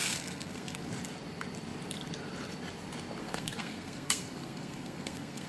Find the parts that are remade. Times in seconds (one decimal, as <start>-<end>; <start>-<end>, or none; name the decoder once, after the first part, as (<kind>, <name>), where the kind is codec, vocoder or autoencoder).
0.0-0.9 (codec, SNAC); 3.2-5.5